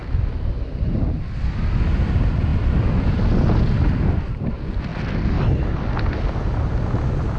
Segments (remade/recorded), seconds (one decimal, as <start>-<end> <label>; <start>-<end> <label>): 0.0-7.4 recorded